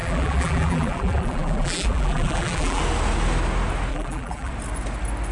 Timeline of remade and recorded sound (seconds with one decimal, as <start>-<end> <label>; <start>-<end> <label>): 0.0-2.8 remade; 2.8-3.9 recorded; 3.9-4.5 remade; 4.5-5.3 recorded